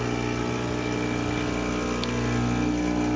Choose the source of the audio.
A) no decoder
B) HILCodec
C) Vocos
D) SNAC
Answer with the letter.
A